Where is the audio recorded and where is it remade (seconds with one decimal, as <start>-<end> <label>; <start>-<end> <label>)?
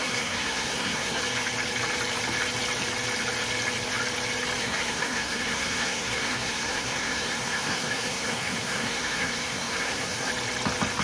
0.0-1.2 remade; 1.2-4.6 recorded; 4.6-10.3 remade; 10.3-11.0 recorded